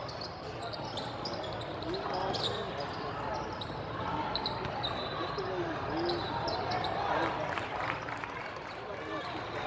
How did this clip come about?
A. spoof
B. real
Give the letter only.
B